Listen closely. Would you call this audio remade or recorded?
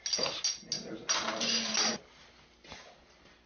recorded